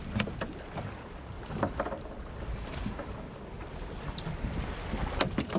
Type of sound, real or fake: real